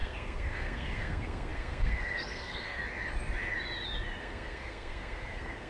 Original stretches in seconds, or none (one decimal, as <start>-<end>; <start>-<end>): 2.8-4.2